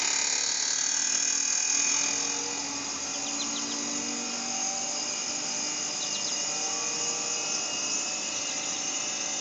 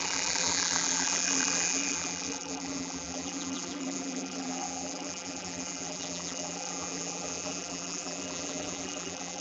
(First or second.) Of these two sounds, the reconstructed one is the second